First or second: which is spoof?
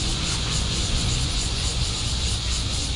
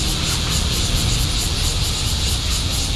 first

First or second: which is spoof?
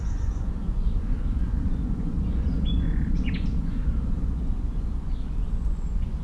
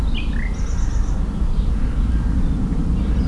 first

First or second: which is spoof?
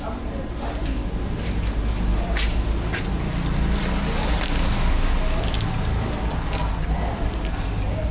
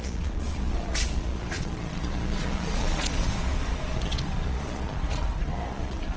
second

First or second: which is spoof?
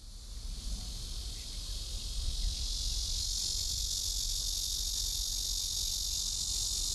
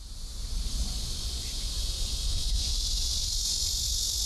second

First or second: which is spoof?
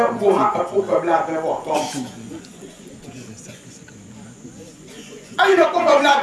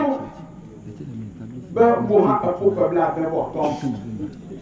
first